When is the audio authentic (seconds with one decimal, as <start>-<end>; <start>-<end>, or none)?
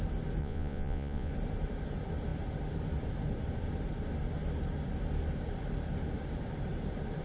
0.0-0.4; 1.3-7.2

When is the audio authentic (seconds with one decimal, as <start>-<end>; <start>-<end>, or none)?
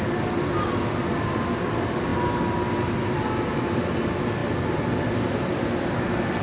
0.0-6.4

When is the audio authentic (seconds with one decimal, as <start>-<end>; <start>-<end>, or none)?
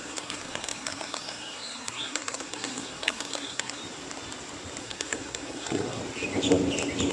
3.8-4.8; 6.0-7.1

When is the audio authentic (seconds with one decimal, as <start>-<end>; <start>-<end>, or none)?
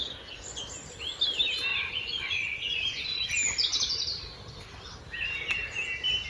0.6-1.7; 3.3-6.3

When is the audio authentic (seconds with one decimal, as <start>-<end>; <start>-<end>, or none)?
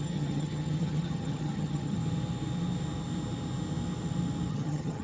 2.0-4.5